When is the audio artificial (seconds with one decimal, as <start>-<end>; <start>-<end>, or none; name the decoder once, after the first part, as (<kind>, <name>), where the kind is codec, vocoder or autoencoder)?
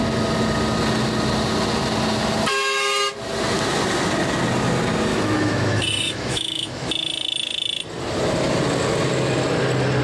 2.5-3.1 (autoencoder, DAC-VAE); 5.1-6.9